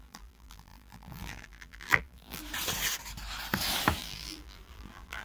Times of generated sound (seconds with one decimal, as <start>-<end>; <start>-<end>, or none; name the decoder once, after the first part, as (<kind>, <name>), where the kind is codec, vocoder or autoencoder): 0.0-2.4 (vocoder, BigVGAN v2); 4.0-5.2